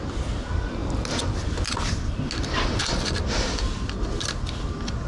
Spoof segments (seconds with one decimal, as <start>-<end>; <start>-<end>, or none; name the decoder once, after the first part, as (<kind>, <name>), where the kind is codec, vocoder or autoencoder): none